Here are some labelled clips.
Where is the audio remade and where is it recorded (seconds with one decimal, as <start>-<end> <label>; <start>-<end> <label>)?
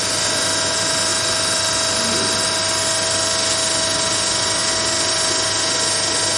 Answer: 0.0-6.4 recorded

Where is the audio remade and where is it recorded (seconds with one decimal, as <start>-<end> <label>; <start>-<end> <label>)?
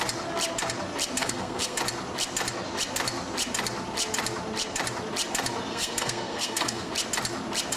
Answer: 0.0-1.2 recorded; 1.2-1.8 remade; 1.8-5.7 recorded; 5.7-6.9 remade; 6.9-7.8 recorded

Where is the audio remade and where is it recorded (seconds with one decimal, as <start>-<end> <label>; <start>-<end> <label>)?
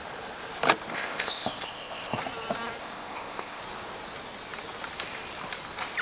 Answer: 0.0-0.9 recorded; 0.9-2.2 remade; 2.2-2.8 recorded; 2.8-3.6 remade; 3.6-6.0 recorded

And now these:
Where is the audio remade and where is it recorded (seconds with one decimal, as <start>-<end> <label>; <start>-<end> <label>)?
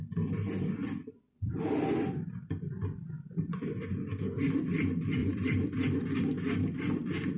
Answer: 0.0-0.8 recorded; 0.8-3.3 remade; 3.3-5.2 recorded; 5.2-6.8 remade; 6.8-7.4 recorded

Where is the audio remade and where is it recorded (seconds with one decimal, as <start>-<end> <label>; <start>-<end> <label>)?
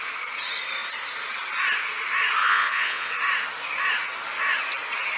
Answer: 0.0-2.4 recorded; 2.4-3.1 remade; 3.1-5.2 recorded